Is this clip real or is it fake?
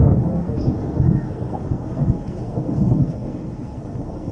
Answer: fake